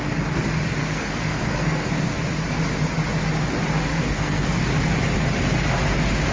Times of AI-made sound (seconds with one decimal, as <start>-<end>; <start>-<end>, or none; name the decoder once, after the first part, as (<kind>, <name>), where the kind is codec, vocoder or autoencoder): 0.8-2.1 (codec, SNAC); 3.9-4.6